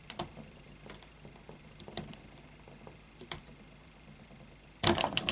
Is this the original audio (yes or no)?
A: no